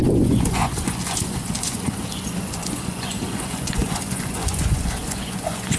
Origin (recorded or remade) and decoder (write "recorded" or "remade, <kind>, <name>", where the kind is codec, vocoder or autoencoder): remade, vocoder, Vocos